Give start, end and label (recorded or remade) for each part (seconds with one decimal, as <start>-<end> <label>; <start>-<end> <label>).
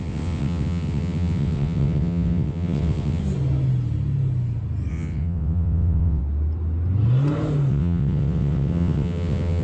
0.0-3.2 remade; 3.2-4.9 recorded; 4.9-6.2 remade; 6.2-7.7 recorded; 7.7-9.6 remade